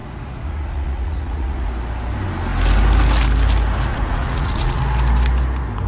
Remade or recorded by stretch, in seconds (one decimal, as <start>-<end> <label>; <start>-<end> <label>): 0.0-1.7 remade; 1.7-3.9 recorded; 3.9-4.8 remade; 4.8-5.9 recorded